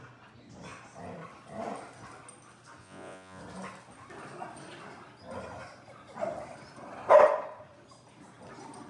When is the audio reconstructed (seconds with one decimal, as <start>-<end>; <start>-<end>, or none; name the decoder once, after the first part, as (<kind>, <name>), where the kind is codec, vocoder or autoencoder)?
2.8-3.4 (vocoder, Vocos)